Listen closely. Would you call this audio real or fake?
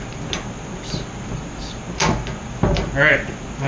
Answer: real